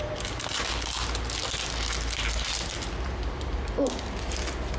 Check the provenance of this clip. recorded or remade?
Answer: recorded